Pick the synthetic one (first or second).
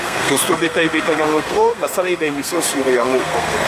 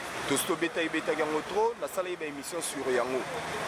first